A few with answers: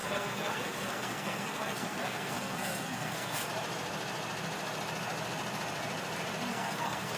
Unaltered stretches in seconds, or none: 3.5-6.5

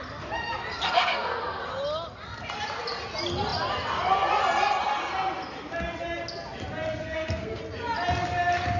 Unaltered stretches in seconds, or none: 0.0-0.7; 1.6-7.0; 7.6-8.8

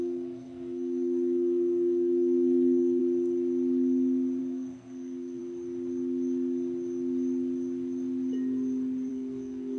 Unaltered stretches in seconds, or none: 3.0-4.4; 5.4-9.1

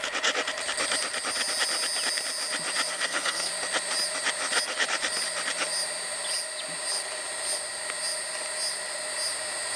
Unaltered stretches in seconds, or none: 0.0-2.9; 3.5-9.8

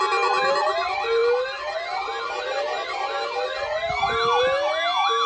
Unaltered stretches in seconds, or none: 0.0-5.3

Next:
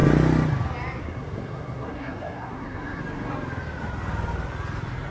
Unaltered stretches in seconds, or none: 0.0-1.0; 3.0-5.1